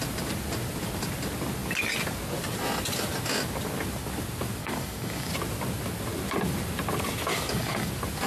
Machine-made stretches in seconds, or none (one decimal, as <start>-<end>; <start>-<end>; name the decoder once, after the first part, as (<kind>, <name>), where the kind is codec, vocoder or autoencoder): 4.6-5.3 (codec, DAC); 7.3-7.9